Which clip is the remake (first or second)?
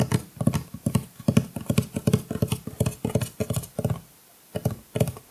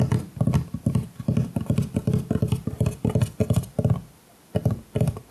second